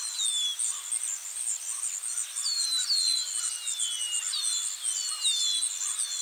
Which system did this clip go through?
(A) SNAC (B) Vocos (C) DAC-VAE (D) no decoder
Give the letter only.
D